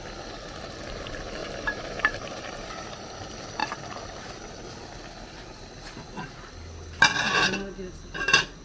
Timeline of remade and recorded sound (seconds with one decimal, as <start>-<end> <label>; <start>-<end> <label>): 0.0-1.4 recorded; 1.4-2.7 remade; 2.7-8.6 recorded